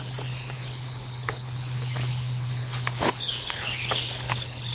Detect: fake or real fake